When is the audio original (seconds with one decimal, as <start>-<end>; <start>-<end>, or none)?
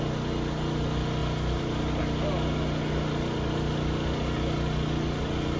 0.0-5.6